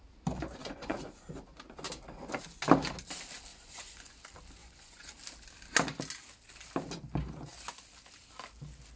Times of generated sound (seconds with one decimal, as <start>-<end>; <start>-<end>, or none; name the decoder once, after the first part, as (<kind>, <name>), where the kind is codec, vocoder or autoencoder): 0.6-1.3 (vocoder, Vocos); 3.5-4.1; 4.6-5.1